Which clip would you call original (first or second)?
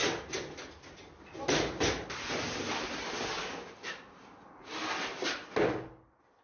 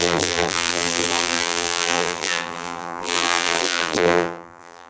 first